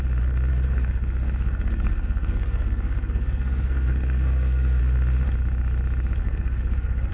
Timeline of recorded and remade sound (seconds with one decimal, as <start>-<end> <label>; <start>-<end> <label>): 0.0-0.5 recorded; 0.5-4.8 remade; 4.8-6.2 recorded; 6.2-7.1 remade